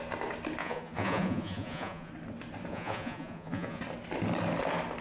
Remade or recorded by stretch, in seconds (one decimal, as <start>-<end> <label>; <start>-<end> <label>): 0.0-0.6 recorded; 0.6-2.1 remade; 2.1-2.7 recorded; 2.7-3.8 remade; 3.8-5.0 recorded

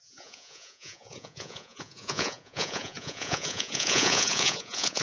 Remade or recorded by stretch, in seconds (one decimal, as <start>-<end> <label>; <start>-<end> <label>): 0.0-5.0 remade